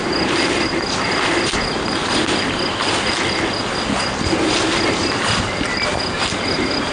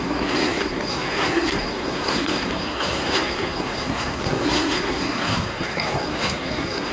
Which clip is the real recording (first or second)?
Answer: first